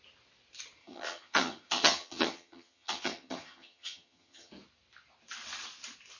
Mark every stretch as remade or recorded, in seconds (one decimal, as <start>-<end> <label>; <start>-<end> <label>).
0.0-0.8 recorded; 0.8-4.5 remade; 4.5-6.2 recorded